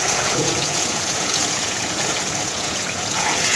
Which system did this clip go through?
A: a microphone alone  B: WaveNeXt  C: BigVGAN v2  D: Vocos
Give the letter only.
D